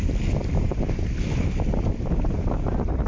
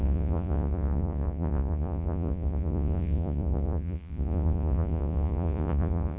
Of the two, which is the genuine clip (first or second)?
first